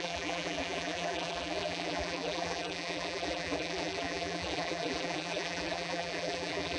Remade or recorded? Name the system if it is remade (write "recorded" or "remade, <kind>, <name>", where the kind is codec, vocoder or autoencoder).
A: remade, vocoder, BigVGAN v2